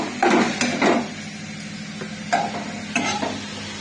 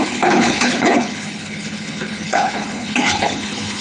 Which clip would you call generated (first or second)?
second